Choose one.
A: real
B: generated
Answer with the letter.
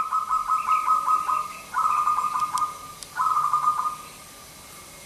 A